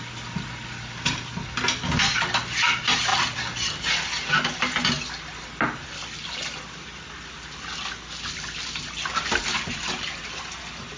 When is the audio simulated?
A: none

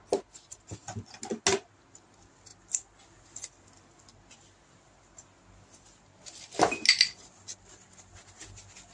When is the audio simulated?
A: none

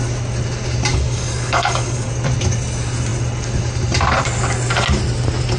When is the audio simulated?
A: 0.9-2.1

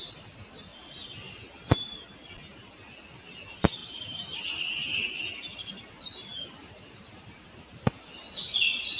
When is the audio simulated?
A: 3.8-4.4; 6.6-8.2